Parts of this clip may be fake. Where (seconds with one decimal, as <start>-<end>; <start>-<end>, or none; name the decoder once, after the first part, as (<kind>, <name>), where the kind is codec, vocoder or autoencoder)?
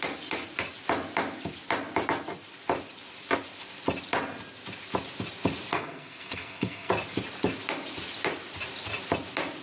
5.7-6.9 (codec, SNAC)